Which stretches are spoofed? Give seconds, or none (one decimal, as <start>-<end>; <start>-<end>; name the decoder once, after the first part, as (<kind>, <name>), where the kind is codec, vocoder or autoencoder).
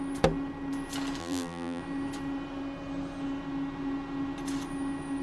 1.2-1.8 (vocoder, BigVGAN v2)